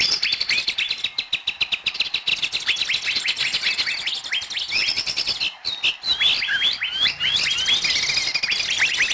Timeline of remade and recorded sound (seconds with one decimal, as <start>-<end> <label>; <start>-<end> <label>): 0.0-9.1 recorded